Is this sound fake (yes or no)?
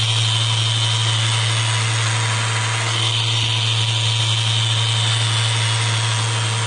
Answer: no